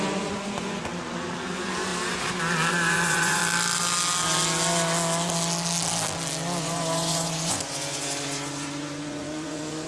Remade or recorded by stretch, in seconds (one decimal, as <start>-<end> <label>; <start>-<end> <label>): 0.0-1.9 remade; 1.9-2.7 recorded; 2.7-3.4 remade; 3.4-6.6 recorded; 6.6-9.9 remade